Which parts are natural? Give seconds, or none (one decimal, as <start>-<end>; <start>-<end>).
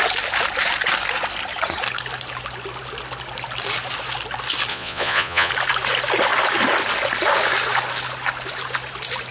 0.0-4.7; 5.5-9.3